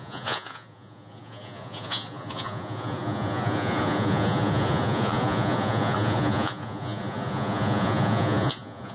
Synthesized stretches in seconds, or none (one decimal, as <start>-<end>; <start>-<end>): 0.0-8.9